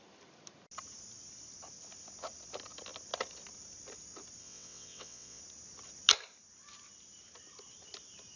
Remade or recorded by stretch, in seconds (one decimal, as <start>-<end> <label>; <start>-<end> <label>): 0.0-4.4 recorded; 4.4-5.4 remade; 5.4-8.4 recorded